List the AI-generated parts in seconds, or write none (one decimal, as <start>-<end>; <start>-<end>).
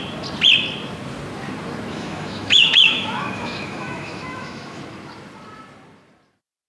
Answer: 1.9-4.8